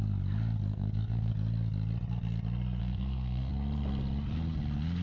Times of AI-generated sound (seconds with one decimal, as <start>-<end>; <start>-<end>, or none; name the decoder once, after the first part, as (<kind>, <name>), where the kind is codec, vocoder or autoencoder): 0.7-1.3 (codec, SNAC); 2.8-3.5